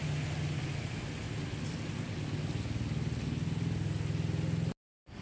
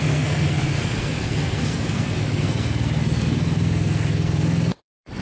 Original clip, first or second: first